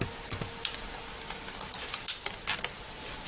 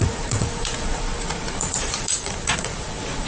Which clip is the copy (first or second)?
second